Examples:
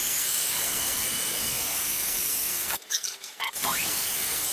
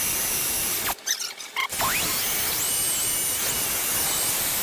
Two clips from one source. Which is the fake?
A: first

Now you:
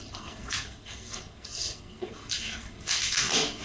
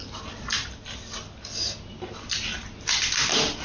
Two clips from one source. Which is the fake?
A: first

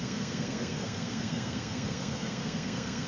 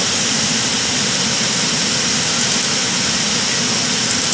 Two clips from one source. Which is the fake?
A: first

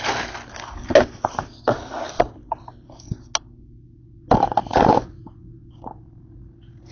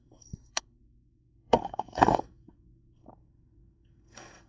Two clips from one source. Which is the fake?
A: second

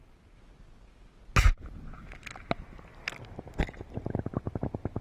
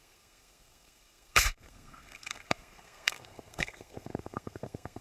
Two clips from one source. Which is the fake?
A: second